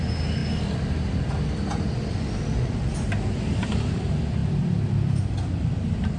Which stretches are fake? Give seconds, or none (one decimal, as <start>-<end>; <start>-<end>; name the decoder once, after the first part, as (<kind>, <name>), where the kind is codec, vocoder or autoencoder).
none